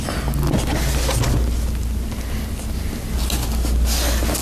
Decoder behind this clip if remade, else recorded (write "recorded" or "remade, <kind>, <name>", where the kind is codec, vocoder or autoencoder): recorded